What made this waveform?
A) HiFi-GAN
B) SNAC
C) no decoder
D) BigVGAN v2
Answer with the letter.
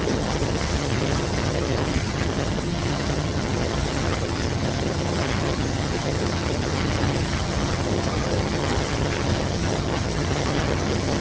A